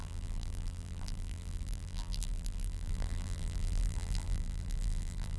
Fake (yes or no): yes